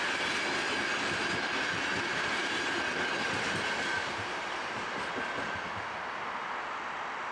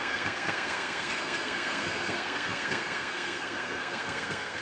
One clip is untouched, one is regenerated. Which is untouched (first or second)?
first